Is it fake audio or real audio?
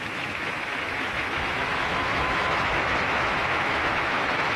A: fake